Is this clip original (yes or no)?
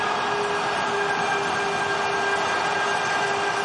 yes